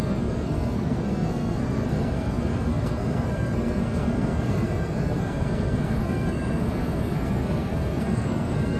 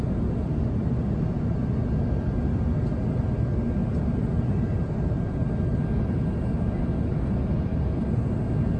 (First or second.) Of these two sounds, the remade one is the first